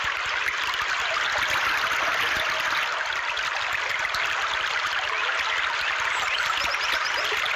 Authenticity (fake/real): real